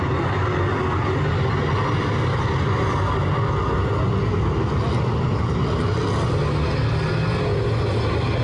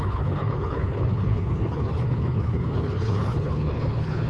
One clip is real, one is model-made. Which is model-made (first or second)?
second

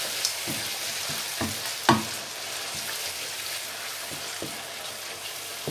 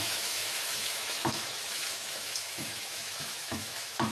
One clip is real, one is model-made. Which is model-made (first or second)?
second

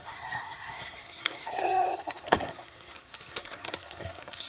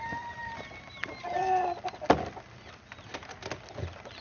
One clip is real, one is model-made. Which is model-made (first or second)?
first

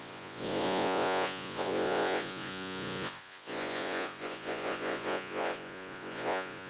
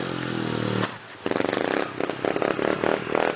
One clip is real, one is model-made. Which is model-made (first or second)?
first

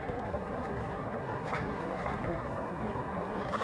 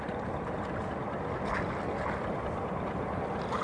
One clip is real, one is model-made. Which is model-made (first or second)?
first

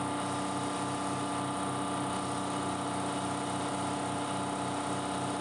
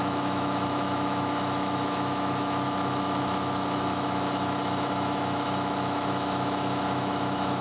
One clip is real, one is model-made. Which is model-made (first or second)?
second